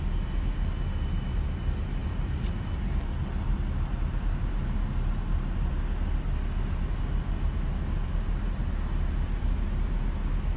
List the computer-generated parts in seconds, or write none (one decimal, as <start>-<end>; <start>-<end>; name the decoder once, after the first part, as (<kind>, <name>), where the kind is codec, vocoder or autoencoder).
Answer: none